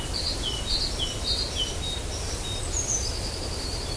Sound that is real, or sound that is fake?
real